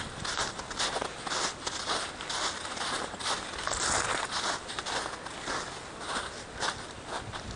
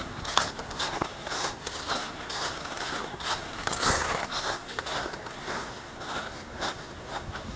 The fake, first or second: second